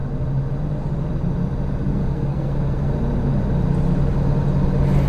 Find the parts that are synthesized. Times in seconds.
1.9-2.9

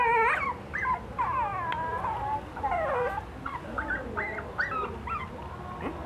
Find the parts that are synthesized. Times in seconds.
none

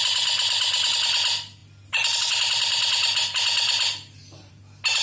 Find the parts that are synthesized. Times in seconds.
none

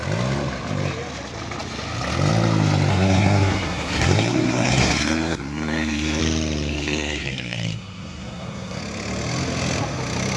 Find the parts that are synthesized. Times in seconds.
2.9-6.2; 6.7-8.8

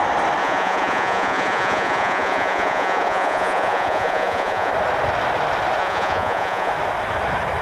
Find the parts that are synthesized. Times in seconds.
0.4-4.7; 5.8-6.7

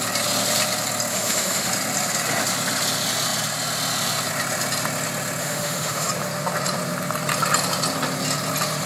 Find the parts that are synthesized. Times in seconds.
1.1-1.7; 5.4-6.1

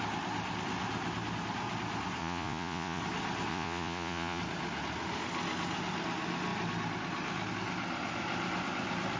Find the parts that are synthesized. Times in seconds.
2.2-3.0; 3.5-4.4